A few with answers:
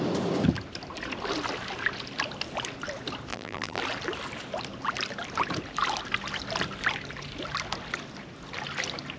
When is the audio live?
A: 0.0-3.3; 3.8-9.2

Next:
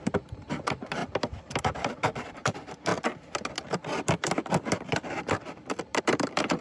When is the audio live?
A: 1.0-1.6; 2.9-6.0